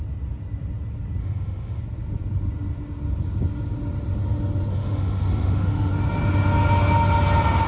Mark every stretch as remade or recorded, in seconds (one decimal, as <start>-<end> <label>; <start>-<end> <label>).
0.0-1.2 recorded; 1.2-1.8 remade; 1.8-4.7 recorded; 4.7-5.9 remade; 5.9-7.7 recorded